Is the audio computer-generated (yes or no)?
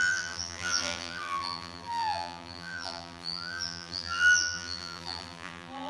yes